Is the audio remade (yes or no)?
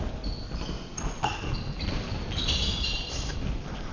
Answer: no